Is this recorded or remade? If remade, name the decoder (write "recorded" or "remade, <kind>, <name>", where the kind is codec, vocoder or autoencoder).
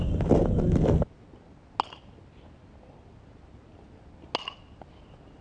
recorded